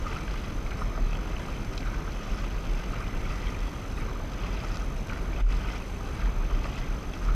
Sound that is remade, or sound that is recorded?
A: recorded